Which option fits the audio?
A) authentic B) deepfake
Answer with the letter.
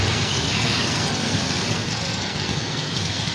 B